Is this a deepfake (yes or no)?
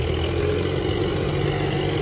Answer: no